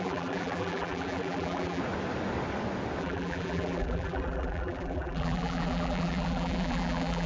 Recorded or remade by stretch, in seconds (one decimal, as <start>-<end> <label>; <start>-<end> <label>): 0.0-1.8 remade; 1.8-3.0 recorded; 3.0-7.3 remade